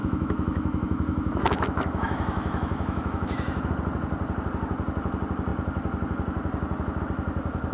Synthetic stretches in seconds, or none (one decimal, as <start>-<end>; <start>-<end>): 0.0-3.7